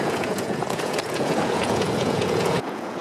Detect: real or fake fake